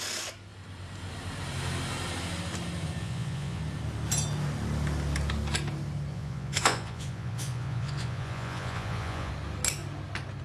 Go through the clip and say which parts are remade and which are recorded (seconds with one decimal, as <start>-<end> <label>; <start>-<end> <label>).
0.0-3.0 recorded; 3.0-3.6 remade; 3.6-6.1 recorded; 6.1-9.3 remade; 9.3-10.4 recorded